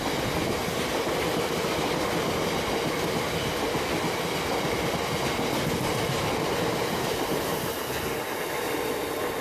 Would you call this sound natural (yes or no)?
yes